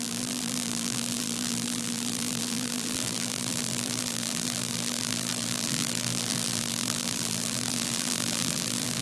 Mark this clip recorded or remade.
remade